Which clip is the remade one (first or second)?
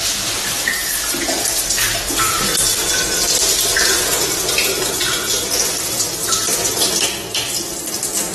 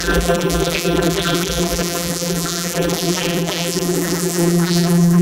second